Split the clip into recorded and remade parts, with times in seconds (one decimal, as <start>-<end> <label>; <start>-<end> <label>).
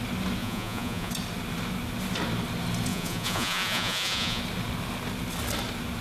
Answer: 0.0-0.4 recorded; 0.4-1.1 remade; 1.1-2.9 recorded; 2.9-4.4 remade; 4.4-6.0 recorded